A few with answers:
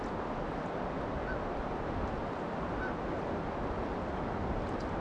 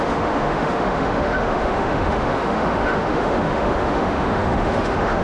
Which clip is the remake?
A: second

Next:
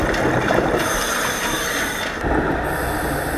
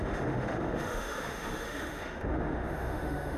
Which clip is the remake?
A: second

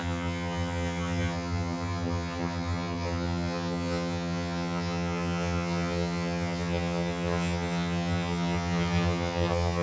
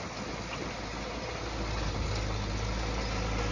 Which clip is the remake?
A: first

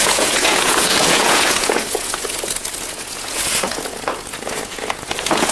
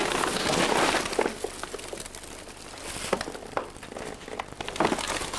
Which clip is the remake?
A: first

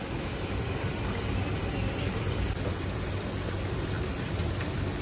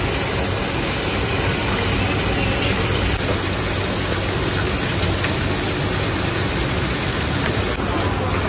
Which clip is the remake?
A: first